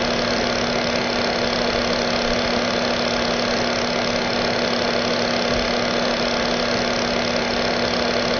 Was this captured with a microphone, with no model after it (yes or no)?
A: yes